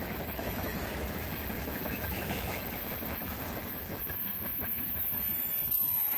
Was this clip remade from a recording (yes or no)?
yes